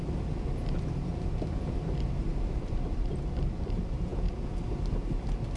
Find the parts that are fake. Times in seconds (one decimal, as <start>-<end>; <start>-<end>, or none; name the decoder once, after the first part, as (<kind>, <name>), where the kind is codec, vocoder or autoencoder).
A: 4.1-4.6 (vocoder, Vocos)

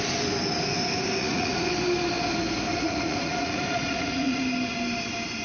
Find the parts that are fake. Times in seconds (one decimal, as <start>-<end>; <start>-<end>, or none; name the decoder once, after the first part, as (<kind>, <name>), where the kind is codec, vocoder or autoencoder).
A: 1.2-1.7 (vocoder, Vocos); 2.7-4.4